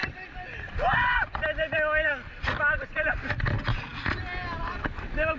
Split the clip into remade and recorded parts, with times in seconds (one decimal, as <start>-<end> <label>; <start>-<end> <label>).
0.0-5.4 recorded